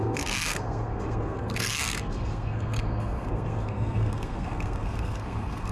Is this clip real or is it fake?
fake